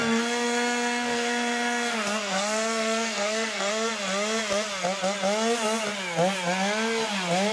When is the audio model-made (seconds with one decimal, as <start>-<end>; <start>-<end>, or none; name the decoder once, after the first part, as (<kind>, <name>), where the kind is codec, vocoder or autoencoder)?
0.0-3.7 (codec, SNAC)